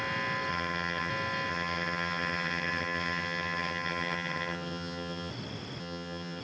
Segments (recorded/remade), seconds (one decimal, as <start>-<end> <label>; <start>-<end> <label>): 0.0-0.5 recorded; 0.5-1.1 remade; 1.1-1.5 recorded; 1.5-5.3 remade; 5.3-5.8 recorded; 5.8-6.4 remade